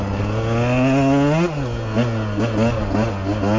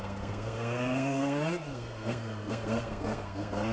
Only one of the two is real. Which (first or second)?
first